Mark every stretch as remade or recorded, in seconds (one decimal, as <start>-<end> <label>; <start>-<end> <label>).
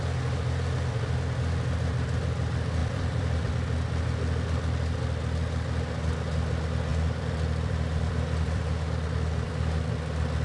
0.0-2.8 recorded; 2.8-3.5 remade; 3.5-6.9 recorded; 6.9-9.9 remade; 9.9-10.4 recorded